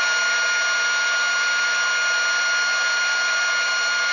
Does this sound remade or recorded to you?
recorded